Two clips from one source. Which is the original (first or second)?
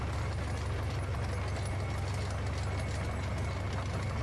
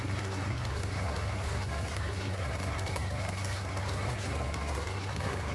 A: first